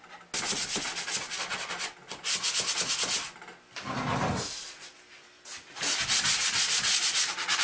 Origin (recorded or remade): recorded